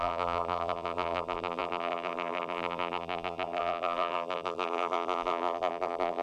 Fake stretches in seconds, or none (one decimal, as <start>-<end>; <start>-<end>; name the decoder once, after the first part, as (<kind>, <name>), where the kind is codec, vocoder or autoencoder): 0.0-6.2 (vocoder, BigVGAN v2)